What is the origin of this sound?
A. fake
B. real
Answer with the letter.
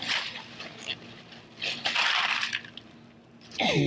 B